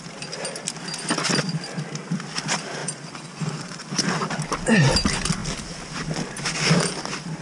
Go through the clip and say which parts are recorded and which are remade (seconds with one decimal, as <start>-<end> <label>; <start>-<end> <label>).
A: 0.0-2.8 recorded; 2.8-4.0 remade; 4.0-7.4 recorded